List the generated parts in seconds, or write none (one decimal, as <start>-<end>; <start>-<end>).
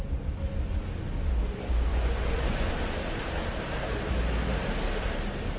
1.9-2.7